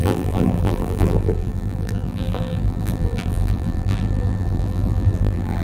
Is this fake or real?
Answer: fake